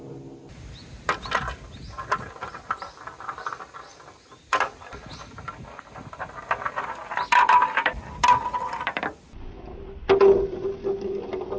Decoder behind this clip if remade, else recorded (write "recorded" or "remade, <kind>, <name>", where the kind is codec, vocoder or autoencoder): recorded